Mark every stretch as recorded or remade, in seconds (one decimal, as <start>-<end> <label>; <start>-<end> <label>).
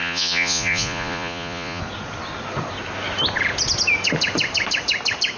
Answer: 0.0-1.8 remade; 1.8-5.4 recorded